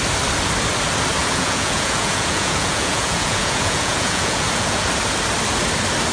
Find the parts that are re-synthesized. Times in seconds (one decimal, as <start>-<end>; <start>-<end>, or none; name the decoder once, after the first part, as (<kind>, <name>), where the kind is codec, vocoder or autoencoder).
1.2-4.9 (vocoder, Vocos)